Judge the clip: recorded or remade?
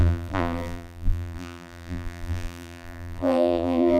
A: remade